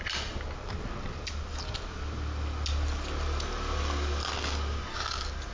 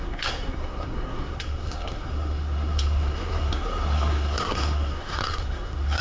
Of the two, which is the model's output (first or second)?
second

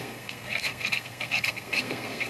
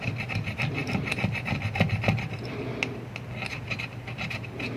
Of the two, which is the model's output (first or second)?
first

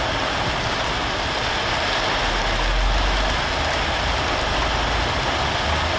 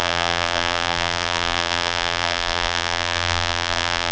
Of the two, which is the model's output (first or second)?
second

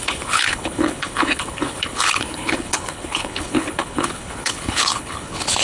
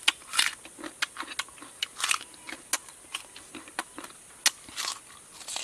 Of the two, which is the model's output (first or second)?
first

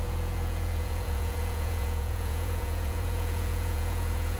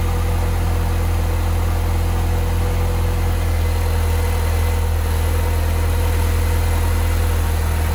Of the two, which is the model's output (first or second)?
first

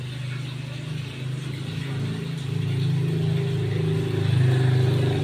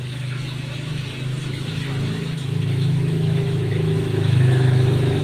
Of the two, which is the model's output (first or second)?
second